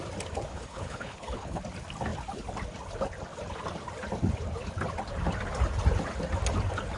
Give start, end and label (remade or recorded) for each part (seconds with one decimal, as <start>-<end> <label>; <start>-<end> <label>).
0.0-0.5 recorded; 0.5-1.6 remade; 1.6-7.0 recorded